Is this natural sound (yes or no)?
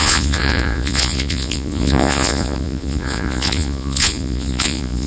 no